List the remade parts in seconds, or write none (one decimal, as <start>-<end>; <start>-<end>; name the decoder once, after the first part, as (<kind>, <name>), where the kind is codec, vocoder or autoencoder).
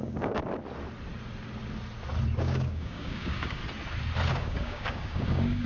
0.0-0.4 (codec, DAC); 2.4-3.6; 4.3-5.7